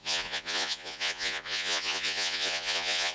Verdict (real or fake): fake